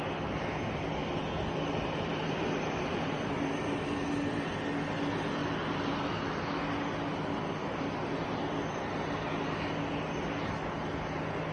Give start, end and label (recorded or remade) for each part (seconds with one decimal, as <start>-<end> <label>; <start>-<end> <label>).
0.0-1.0 recorded; 1.0-3.6 remade; 3.6-5.4 recorded; 5.4-6.1 remade; 6.1-7.6 recorded; 7.6-8.9 remade; 8.9-11.5 recorded